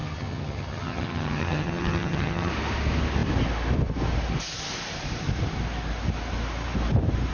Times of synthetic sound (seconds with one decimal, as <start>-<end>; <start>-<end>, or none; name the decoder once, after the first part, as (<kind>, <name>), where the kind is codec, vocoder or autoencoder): 0.0-2.5 (vocoder, HiFi-GAN)